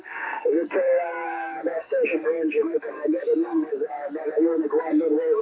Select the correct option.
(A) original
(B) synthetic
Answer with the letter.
B